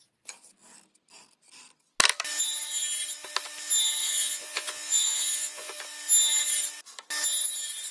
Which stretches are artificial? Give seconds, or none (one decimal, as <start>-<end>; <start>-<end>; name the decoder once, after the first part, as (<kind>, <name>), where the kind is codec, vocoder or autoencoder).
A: 4.0-5.7 (vocoder, Vocos)